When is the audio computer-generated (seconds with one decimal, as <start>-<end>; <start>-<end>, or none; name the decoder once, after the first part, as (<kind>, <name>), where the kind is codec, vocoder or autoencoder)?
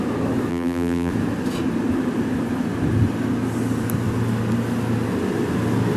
0.5-1.1 (vocoder, BigVGAN v2)